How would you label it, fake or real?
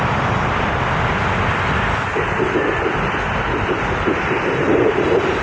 real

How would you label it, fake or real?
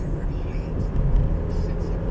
real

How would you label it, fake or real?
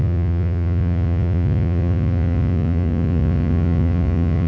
fake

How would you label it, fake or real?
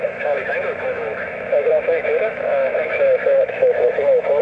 fake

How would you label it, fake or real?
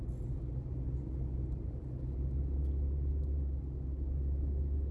real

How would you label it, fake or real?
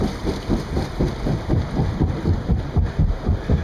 real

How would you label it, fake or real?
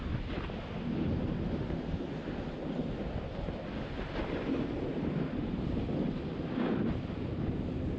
real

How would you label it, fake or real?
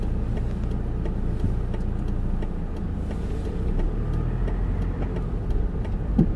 real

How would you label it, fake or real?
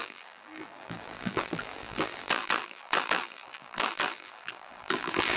fake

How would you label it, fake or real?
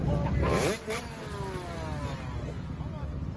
real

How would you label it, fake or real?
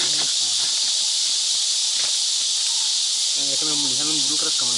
real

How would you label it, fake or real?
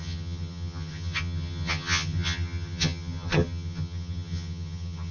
fake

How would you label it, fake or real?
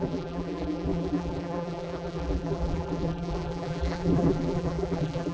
fake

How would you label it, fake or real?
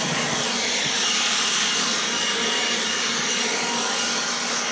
fake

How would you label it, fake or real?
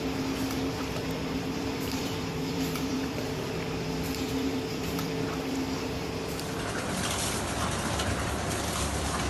fake